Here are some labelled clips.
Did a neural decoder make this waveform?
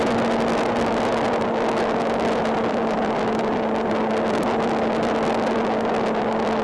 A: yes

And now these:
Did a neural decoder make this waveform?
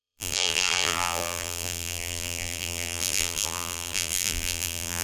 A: yes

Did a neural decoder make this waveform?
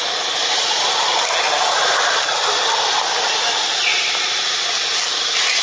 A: no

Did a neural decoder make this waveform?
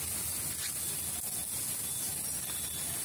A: no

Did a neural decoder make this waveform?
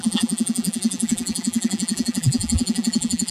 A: yes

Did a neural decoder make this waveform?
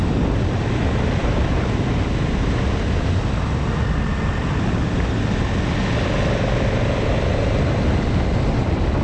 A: no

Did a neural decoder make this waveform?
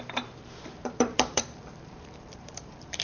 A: yes